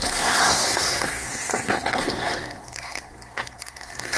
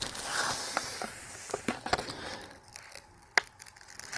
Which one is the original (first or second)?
second